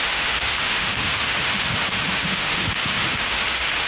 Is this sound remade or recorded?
remade